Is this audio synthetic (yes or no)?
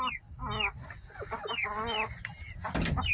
no